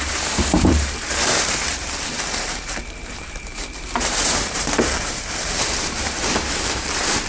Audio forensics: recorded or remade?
remade